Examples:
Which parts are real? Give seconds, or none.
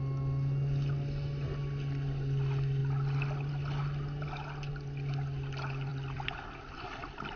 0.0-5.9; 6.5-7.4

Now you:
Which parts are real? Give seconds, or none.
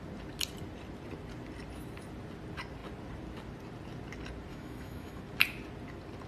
0.0-4.5; 5.2-6.3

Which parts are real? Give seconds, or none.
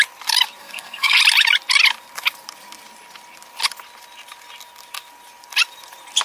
0.0-0.6; 1.2-6.2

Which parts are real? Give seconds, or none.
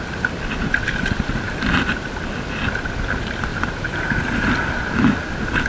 0.0-3.5; 4.2-5.7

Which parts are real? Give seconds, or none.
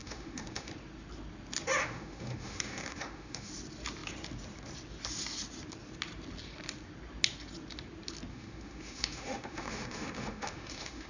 0.7-1.8; 3.5-8.3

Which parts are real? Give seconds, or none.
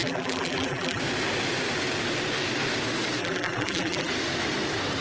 1.0-3.2; 4.1-5.0